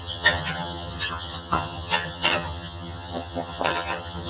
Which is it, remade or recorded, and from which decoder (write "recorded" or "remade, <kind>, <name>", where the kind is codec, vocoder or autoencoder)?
remade, vocoder, HiFi-GAN